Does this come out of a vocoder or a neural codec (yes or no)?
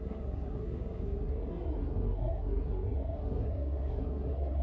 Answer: yes